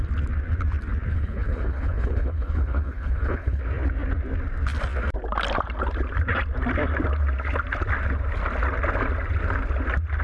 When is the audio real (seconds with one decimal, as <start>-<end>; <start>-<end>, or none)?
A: 0.0-1.1; 3.6-10.2